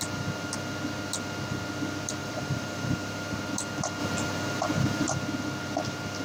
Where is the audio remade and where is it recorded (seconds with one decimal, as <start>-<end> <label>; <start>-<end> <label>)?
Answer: 0.0-2.2 recorded; 2.2-3.4 remade; 3.4-4.0 recorded; 4.0-5.1 remade; 5.1-6.2 recorded